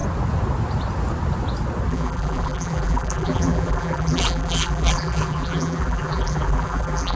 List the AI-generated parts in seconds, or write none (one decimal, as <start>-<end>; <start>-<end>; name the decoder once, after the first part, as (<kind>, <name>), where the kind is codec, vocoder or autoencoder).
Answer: 1.9-7.2 (vocoder, BigVGAN v2)